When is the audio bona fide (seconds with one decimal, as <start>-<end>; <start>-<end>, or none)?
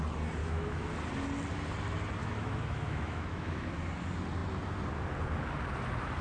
0.0-0.4; 0.9-2.2; 3.7-6.2